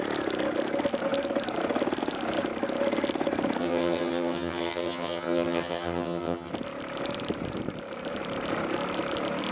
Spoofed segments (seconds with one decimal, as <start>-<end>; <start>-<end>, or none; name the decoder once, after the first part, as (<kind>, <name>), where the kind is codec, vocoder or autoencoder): 3.6-6.5 (vocoder, HiFi-GAN)